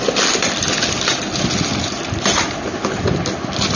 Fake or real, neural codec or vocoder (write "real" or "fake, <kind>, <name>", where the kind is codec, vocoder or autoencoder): real